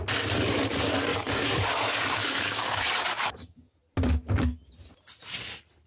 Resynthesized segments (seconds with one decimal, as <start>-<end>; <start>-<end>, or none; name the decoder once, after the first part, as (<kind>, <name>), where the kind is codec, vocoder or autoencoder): 1.1-3.8 (codec, DAC)